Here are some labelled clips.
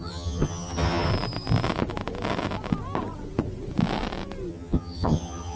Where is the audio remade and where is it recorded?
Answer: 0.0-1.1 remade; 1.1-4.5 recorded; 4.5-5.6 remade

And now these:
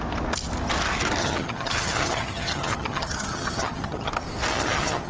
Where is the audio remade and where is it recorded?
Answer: 0.0-1.2 recorded; 1.2-4.1 remade; 4.1-4.5 recorded; 4.5-5.1 remade

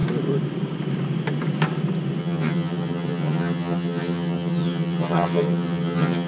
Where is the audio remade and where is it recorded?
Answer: 0.0-2.2 recorded; 2.2-6.3 remade